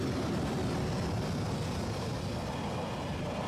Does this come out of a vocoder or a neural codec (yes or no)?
no